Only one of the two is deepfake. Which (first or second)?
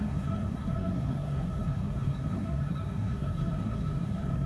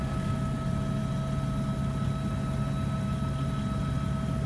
first